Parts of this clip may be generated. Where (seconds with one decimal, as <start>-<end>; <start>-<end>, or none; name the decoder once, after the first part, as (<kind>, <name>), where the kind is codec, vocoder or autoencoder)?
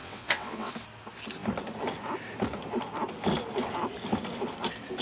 0.0-0.7 (vocoder, WaveNeXt)